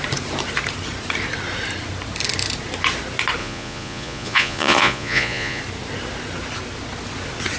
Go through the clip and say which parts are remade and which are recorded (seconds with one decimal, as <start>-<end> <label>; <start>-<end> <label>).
0.0-3.4 recorded; 3.4-5.6 remade; 5.6-7.6 recorded